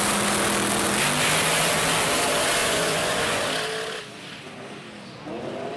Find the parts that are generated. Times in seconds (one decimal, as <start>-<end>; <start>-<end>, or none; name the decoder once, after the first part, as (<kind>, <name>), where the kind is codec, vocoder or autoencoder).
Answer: 2.6-3.4 (vocoder, Vocos)